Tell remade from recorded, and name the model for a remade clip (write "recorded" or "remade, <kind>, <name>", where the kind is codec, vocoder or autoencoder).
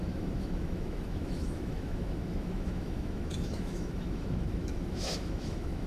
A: remade, autoencoder, DAC-VAE